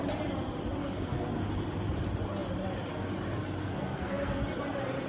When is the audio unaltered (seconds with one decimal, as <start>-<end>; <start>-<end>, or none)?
0.0-0.8; 1.3-3.6; 4.4-5.1